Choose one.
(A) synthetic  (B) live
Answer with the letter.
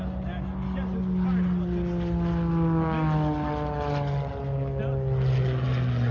B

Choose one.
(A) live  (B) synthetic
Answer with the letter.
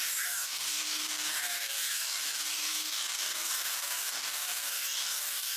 B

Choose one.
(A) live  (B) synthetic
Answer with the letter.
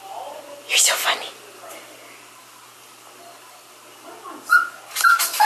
A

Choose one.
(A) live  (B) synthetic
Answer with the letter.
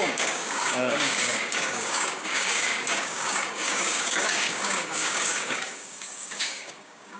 B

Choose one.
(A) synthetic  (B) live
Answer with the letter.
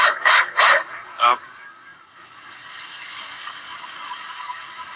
A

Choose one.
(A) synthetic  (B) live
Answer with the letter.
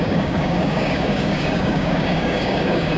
A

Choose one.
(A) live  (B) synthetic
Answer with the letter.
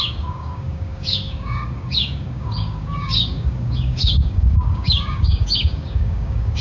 B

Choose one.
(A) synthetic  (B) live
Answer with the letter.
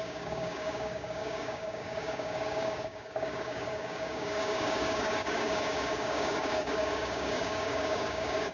A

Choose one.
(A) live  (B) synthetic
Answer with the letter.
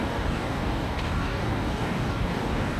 B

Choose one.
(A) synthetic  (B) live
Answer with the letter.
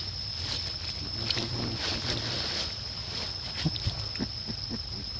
B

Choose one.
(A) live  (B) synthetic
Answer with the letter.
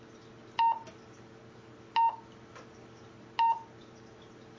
A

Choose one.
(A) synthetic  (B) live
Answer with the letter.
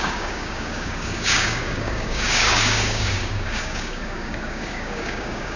A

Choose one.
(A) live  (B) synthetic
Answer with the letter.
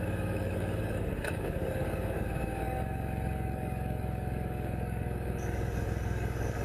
B